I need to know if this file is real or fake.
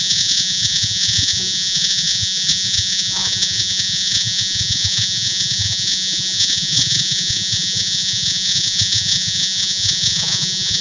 fake